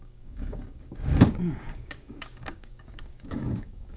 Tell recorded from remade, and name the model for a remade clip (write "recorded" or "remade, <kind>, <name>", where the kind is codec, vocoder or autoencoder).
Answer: remade, codec, DAC